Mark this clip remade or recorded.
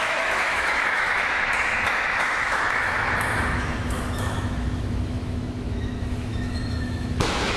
remade